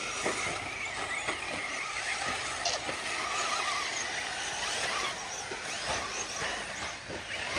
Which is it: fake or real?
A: real